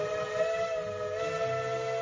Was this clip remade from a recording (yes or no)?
no